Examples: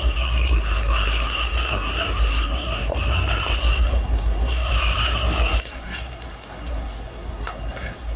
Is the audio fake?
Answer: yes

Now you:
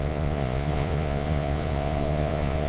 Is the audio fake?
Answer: yes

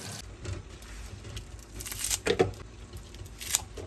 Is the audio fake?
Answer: no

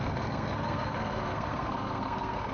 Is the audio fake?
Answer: yes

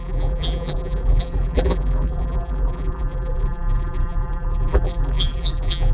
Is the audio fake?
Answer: yes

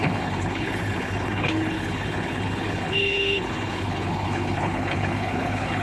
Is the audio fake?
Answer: yes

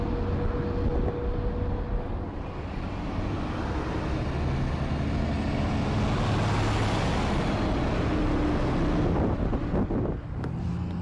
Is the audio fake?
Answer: no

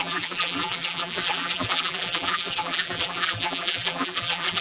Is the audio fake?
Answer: yes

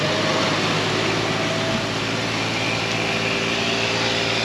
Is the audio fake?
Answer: no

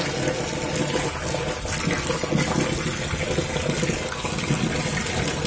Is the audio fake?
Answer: no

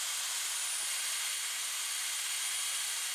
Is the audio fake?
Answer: no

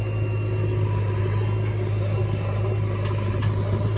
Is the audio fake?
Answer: no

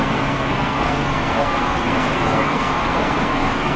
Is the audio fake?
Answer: yes